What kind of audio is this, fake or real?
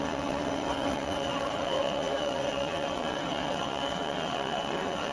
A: fake